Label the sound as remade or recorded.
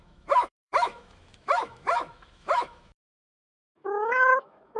remade